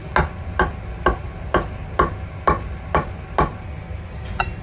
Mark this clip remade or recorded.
recorded